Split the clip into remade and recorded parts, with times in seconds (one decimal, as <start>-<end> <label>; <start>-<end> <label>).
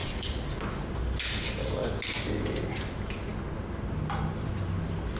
0.0-5.2 recorded